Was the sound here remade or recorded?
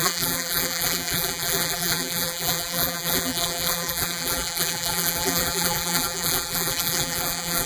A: remade